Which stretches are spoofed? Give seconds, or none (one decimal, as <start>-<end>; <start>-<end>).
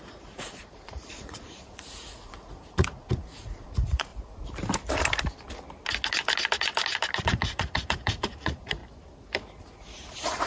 0.0-4.1; 7.2-8.8; 9.6-10.5